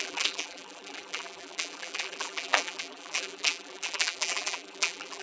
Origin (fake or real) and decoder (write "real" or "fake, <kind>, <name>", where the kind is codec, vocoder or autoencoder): fake, vocoder, BigVGAN v2